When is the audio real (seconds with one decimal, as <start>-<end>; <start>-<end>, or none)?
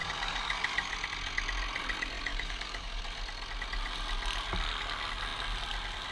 0.9-2.3; 3.0-6.1